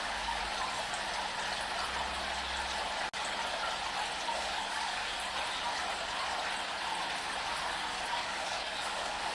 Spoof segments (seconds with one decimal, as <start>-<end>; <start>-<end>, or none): 0.0-0.4; 4.3-5.1; 8.1-9.3

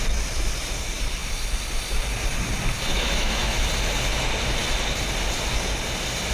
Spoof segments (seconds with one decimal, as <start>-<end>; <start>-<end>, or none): 2.9-3.7